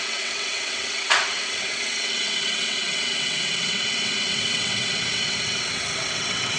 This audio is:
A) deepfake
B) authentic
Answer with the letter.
A